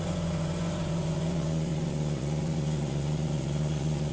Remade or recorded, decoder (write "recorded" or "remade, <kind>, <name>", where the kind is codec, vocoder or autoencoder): remade, vocoder, Vocos